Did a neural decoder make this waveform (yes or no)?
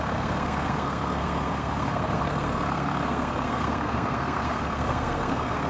yes